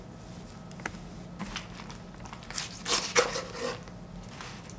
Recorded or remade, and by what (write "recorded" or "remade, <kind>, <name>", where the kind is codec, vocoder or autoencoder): recorded